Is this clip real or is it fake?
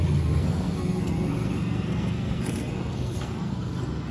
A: fake